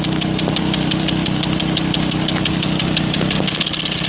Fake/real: fake